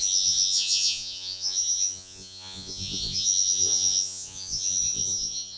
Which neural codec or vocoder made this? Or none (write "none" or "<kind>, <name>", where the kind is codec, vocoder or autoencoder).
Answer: vocoder, Vocos